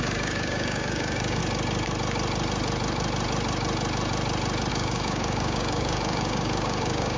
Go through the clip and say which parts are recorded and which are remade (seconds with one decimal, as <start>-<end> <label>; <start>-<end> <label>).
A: 0.0-1.4 remade; 1.4-4.7 recorded; 4.7-7.2 remade